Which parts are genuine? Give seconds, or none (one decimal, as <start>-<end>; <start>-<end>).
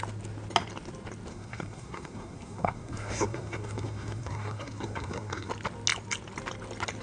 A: 0.0-1.3; 5.5-7.0